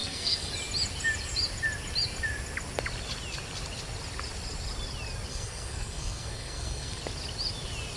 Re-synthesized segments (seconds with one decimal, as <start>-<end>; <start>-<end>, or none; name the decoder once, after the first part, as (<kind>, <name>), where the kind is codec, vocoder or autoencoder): 0.0-0.5 (codec, SNAC); 5.3-7.0